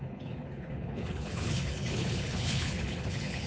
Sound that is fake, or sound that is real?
fake